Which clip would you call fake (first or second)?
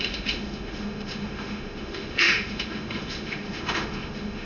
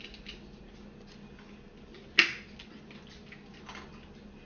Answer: first